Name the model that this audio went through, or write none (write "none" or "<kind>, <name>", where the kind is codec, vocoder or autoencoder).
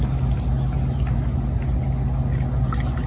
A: none